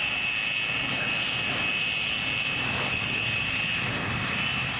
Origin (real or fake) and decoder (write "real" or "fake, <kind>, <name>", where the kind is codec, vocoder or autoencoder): real